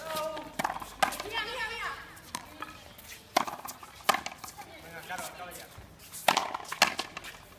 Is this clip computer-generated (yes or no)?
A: no